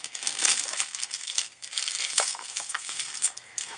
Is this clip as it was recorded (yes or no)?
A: no